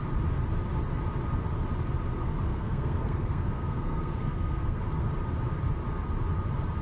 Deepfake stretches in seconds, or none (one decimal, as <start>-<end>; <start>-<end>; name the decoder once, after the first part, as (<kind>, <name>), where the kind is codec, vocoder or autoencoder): 2.2-4.8 (codec, SNAC)